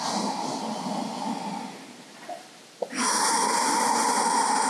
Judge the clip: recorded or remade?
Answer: recorded